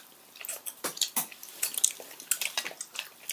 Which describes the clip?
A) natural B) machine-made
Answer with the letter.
A